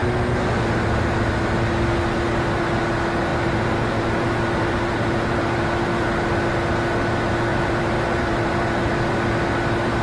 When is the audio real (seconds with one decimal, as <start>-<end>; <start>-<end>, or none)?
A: 0.0-3.3; 5.6-7.5; 9.0-10.0